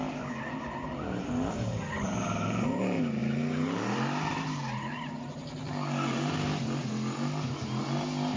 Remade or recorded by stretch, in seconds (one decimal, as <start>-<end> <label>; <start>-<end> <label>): 0.0-8.4 recorded